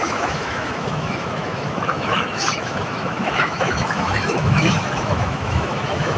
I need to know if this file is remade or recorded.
remade